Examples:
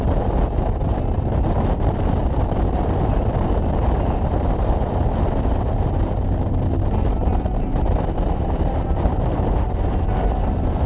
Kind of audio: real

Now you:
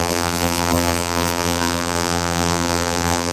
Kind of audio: fake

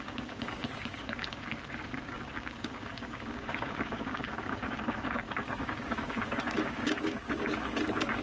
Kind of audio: fake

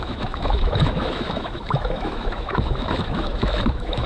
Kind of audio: fake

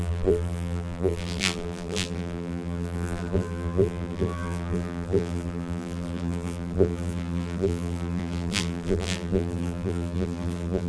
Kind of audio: fake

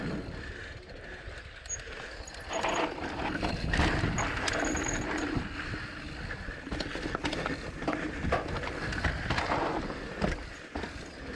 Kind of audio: real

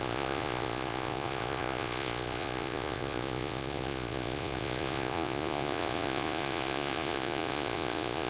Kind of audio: fake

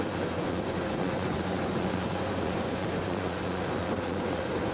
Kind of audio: fake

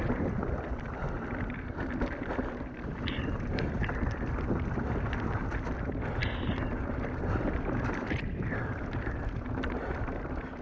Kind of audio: real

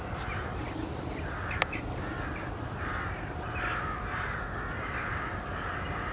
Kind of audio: real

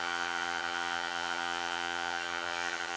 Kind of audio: fake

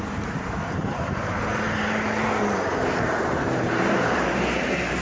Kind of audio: fake